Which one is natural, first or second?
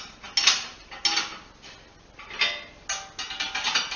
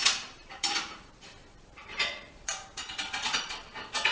first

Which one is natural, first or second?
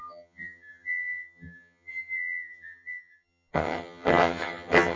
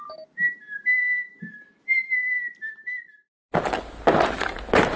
second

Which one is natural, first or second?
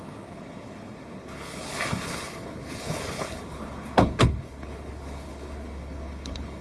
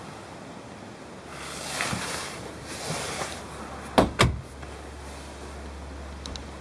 second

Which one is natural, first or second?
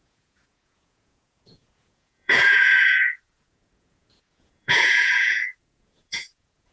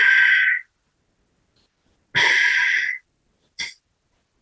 second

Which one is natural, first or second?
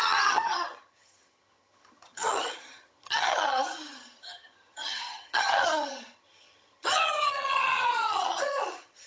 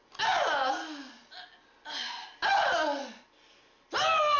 second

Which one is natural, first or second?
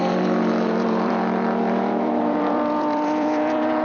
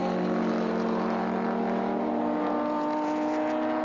second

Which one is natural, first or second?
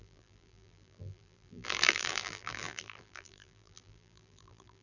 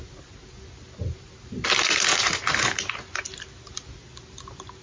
second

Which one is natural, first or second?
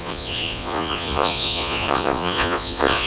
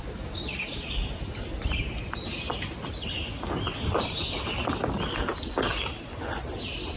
second